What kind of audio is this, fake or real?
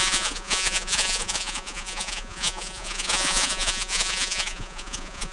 fake